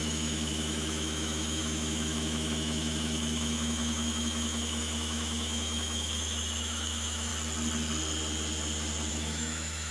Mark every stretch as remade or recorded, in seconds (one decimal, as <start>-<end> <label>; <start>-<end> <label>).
0.0-7.3 remade; 7.3-9.1 recorded; 9.1-9.9 remade